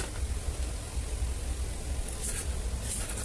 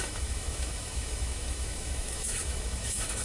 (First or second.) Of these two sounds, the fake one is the second